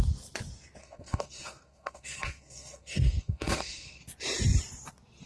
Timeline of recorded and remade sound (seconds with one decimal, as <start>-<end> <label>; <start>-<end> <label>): 0.0-0.8 recorded; 0.8-4.0 remade; 4.0-5.3 recorded